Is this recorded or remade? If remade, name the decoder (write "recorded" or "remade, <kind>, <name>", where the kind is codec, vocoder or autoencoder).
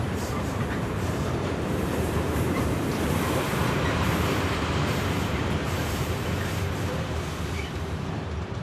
remade, vocoder, BigVGAN v2